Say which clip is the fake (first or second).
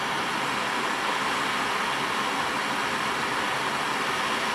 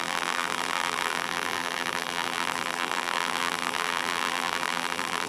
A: second